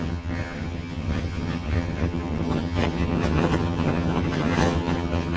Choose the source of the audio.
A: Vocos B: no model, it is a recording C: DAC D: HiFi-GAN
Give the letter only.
D